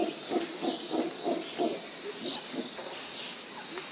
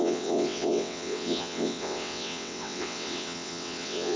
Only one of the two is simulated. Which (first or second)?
second